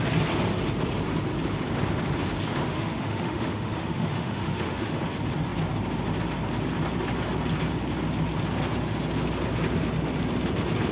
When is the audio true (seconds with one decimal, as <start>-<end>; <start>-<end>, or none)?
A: 0.0-2.5; 5.0-10.9